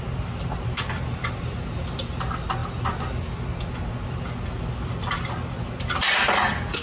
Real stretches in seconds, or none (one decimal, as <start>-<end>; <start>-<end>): 0.0-6.8